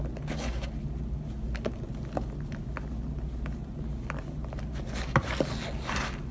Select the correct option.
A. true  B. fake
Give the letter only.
A